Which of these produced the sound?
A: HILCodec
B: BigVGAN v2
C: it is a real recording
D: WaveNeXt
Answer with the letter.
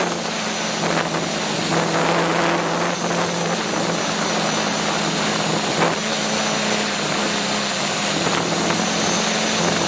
C